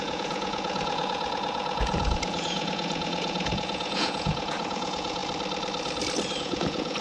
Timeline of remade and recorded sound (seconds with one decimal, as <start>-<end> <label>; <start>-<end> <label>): 0.0-5.2 remade; 5.2-6.4 recorded; 6.4-7.0 remade